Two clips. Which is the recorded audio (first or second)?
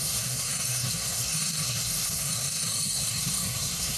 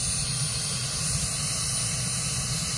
second